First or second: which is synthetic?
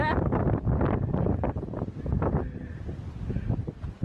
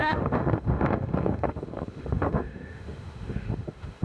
second